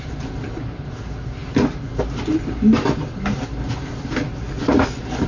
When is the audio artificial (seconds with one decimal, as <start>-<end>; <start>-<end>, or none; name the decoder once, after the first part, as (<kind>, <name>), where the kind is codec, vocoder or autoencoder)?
none